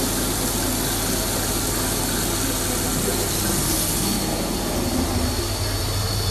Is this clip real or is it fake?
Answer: real